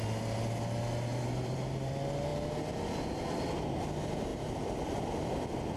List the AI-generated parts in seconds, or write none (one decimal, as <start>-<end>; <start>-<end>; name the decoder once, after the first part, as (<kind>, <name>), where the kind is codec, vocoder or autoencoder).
1.1-1.9 (vocoder, BigVGAN v2)